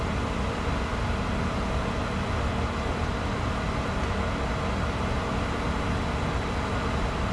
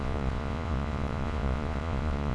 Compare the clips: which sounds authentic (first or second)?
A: first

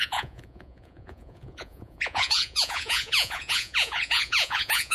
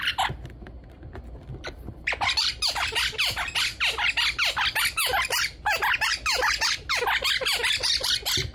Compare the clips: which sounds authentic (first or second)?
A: second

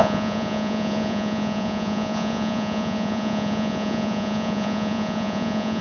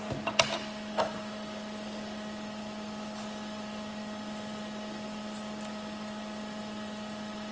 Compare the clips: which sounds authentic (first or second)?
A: second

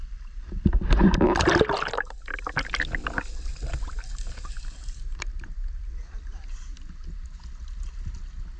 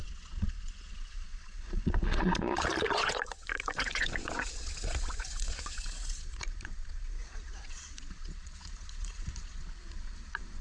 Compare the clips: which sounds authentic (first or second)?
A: first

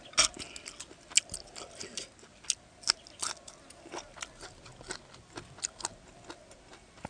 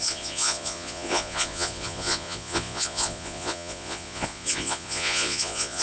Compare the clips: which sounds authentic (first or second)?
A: first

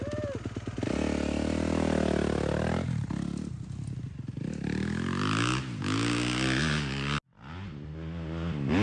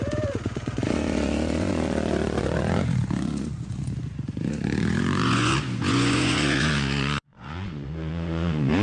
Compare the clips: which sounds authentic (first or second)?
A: first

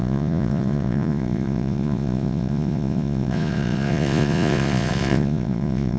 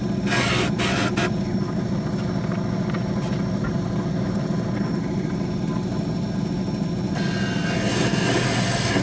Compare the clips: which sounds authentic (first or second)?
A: second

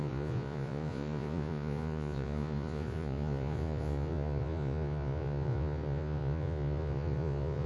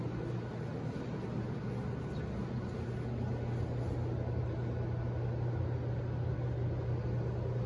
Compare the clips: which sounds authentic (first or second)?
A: second